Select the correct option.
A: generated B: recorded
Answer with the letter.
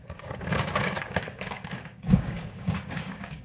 A